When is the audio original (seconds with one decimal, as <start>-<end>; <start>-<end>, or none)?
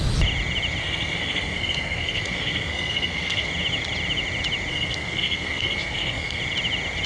0.0-0.8; 3.5-4.7; 6.4-7.1